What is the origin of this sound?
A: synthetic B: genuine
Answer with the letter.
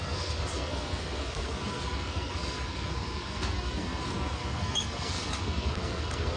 A